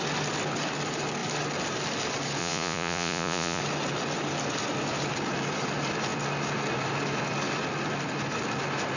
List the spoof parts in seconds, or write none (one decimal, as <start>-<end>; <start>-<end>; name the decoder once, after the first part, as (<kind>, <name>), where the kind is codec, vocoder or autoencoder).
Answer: 2.4-3.6 (vocoder, Vocos)